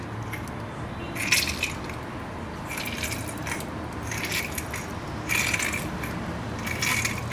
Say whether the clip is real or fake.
real